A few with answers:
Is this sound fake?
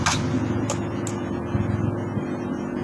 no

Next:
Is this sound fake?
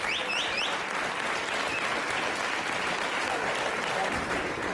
no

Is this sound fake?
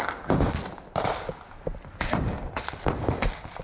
no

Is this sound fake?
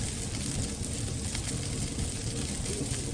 no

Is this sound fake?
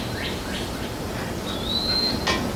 no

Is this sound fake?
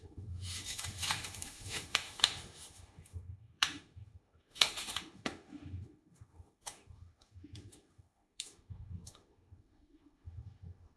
yes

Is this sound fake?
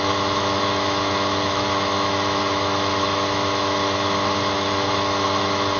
yes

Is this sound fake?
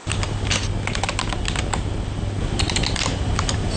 no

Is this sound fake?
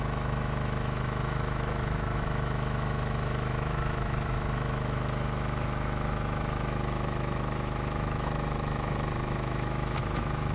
yes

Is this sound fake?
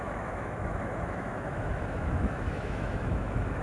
yes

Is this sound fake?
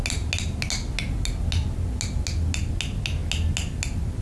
no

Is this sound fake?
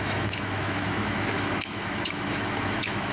yes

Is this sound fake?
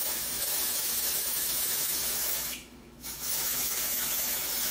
yes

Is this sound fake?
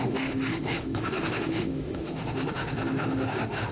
yes